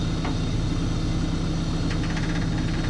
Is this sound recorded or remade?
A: recorded